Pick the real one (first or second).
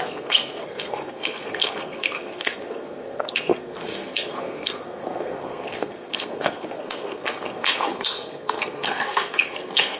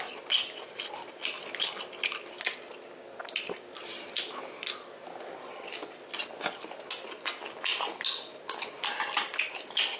second